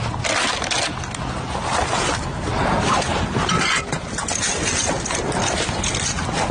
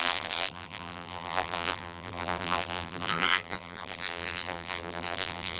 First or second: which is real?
first